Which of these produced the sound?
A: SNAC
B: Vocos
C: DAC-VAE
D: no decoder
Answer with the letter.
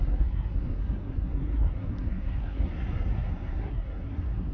A